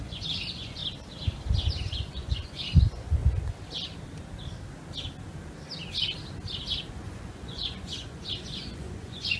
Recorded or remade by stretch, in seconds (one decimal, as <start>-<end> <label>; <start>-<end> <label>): 0.0-0.8 remade; 0.8-1.8 recorded; 1.8-3.2 remade; 3.2-6.9 recorded; 6.9-9.4 remade